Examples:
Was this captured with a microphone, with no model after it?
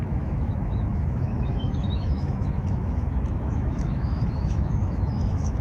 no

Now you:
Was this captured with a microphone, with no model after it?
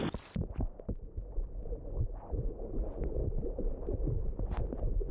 yes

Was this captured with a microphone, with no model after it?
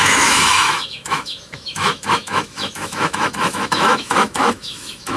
no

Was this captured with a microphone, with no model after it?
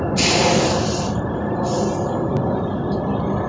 yes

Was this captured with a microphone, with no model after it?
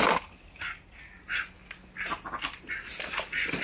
yes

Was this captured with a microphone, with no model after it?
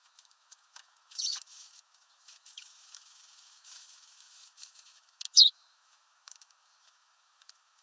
no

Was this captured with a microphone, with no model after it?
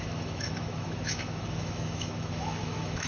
no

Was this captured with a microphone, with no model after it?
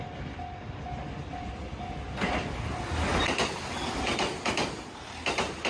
yes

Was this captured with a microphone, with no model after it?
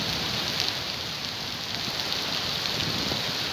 yes